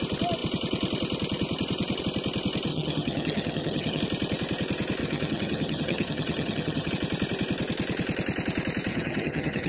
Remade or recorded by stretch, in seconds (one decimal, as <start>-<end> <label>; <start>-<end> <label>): 0.0-2.7 recorded; 2.7-4.0 remade; 4.0-5.0 recorded; 5.0-6.9 remade; 6.9-8.9 recorded; 8.9-9.7 remade